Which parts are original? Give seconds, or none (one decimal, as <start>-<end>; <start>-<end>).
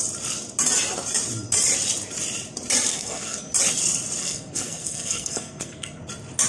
0.0-2.9; 3.5-4.2; 6.0-6.5